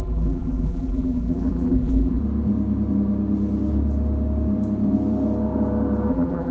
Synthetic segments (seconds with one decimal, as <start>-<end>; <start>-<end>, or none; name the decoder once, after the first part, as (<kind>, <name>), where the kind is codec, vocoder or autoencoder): 0.0-2.2 (vocoder, BigVGAN v2); 6.1-6.5